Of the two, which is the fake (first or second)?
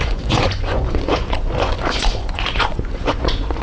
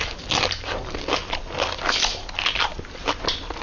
first